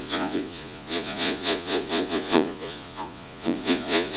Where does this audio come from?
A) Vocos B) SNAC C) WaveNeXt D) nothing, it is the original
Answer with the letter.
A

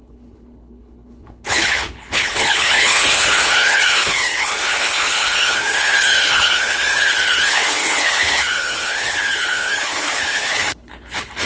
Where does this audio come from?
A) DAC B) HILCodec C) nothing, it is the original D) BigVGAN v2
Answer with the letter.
B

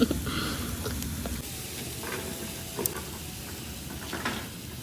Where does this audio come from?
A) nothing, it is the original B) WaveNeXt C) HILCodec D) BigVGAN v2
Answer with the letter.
A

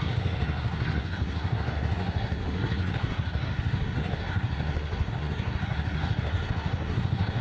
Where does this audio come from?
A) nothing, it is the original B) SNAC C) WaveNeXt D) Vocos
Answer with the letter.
B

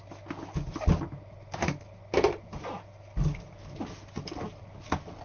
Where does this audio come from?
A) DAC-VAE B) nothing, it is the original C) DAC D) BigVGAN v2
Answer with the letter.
B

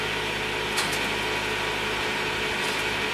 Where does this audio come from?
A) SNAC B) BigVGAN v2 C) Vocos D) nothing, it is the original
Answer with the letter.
D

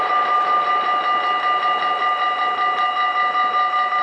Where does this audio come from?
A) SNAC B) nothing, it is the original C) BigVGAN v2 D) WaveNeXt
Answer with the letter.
B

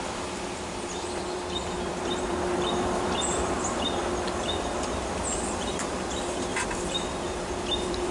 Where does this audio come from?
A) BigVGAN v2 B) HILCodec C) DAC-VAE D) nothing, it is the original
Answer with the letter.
A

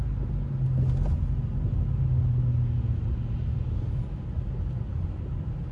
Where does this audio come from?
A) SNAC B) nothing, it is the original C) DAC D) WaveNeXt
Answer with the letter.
B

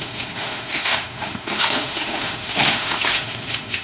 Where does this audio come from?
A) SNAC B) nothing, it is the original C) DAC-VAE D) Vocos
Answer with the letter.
C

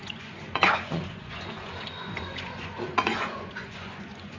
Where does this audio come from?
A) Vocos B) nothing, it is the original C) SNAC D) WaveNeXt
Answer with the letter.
A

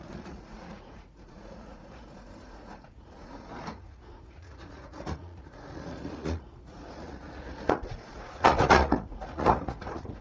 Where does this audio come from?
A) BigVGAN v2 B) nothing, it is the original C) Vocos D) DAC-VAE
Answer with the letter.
C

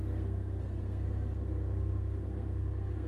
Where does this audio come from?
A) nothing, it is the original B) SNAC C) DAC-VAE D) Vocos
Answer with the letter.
B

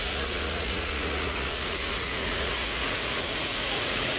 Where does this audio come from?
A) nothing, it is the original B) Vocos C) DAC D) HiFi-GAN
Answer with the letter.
B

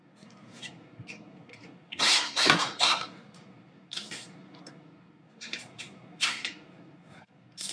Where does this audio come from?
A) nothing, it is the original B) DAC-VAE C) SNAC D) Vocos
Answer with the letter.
C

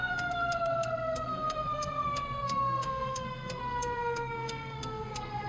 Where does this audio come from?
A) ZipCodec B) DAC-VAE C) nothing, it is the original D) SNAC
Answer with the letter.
D